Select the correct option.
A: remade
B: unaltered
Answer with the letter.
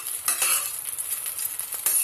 B